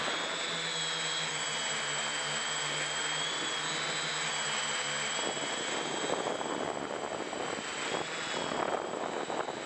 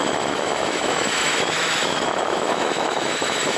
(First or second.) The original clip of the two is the first